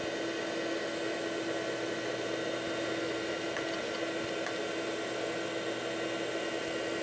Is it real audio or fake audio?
real